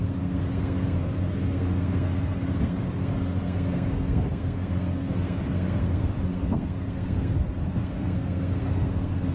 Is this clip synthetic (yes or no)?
yes